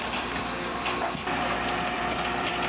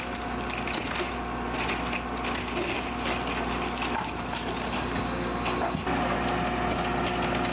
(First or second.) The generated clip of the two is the first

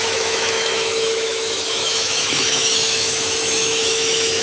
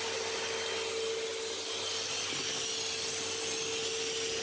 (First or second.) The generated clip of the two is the first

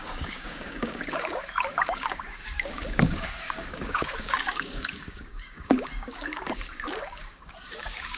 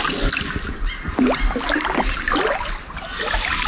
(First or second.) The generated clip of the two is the first